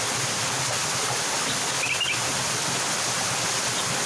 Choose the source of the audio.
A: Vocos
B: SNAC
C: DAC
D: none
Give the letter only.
D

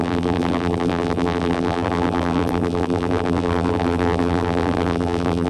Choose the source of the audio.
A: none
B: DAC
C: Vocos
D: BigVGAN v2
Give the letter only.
D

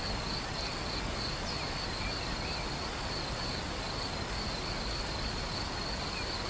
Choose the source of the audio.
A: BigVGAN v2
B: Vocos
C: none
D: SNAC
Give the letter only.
C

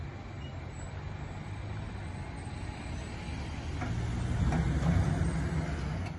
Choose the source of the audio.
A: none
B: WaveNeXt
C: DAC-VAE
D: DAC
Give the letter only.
A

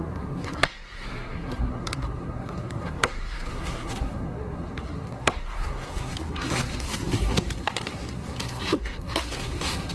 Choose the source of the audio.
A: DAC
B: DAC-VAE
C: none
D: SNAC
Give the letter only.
D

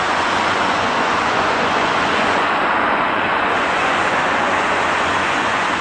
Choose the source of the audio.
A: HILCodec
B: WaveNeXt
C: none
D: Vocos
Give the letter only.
D